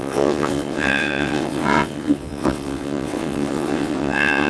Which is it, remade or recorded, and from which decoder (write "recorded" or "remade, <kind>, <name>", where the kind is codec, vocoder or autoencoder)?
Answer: remade, vocoder, WaveNeXt